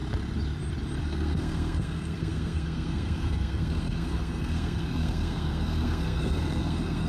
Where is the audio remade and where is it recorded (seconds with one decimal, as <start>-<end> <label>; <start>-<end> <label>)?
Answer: 0.0-1.0 recorded; 1.0-7.1 remade